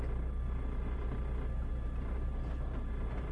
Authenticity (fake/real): real